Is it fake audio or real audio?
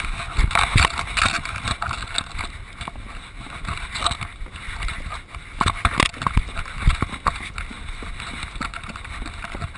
real